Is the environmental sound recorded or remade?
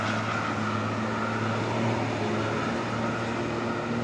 recorded